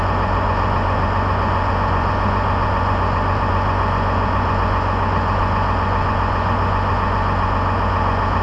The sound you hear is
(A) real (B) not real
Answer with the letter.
B